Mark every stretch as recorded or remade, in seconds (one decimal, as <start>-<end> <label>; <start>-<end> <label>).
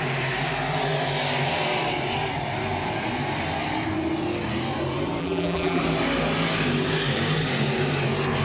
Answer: 0.0-5.2 recorded; 5.2-5.8 remade; 5.8-8.4 recorded